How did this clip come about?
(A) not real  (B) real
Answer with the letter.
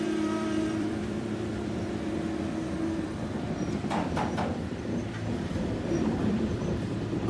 A